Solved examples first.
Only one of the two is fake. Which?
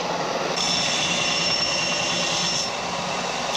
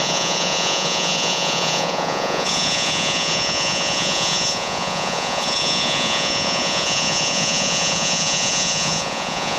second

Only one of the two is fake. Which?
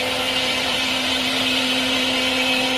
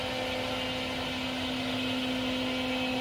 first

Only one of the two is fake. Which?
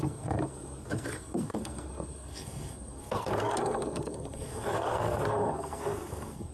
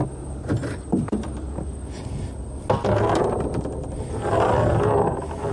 first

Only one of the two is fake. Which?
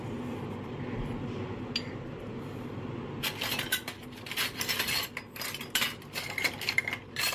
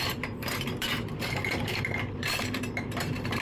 second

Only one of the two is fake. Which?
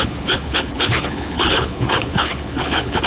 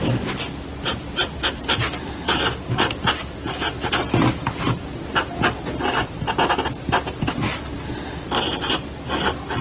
first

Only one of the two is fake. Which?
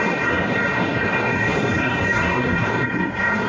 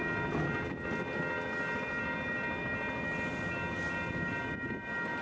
first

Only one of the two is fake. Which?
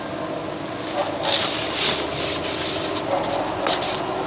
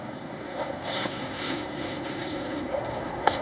second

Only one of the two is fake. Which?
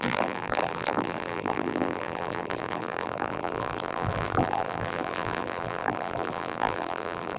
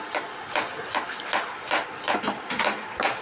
first